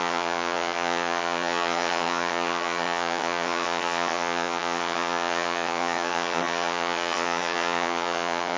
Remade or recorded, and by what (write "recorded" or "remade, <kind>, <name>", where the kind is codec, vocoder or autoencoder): remade, vocoder, HiFi-GAN